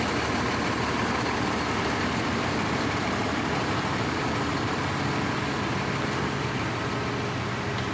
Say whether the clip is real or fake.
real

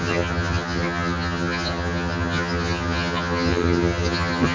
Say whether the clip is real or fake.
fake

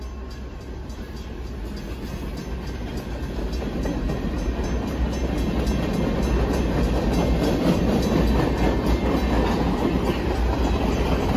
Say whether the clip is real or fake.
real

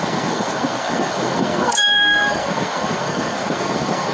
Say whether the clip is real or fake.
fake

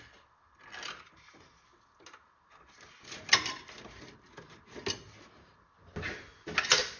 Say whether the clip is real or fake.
real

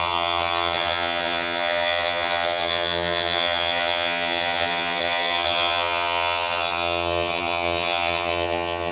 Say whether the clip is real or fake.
fake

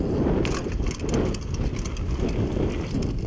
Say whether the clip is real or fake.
real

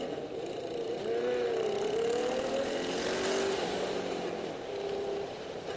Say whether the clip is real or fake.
real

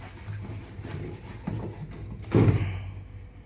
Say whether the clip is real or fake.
real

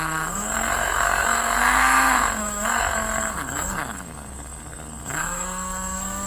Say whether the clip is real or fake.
fake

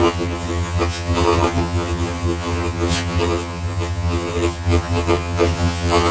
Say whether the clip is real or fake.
fake